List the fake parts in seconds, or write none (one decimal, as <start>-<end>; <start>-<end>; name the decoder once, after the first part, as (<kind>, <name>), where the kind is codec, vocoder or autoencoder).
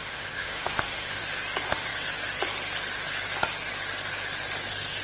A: 0.0-1.2 (autoencoder, DAC-VAE)